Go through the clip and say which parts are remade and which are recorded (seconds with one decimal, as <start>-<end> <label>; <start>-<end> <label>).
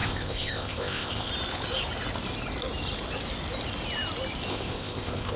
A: 0.0-1.3 remade; 1.3-4.5 recorded; 4.5-5.4 remade